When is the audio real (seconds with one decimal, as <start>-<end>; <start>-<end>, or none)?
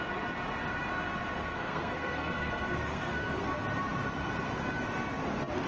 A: 0.0-1.4; 3.5-5.7